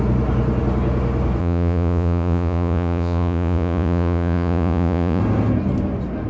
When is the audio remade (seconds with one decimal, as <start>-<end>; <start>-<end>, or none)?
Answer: 1.4-5.2